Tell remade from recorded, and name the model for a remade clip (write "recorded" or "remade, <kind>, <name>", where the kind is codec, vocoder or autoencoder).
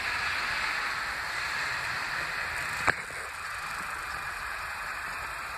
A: recorded